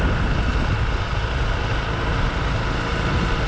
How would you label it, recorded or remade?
recorded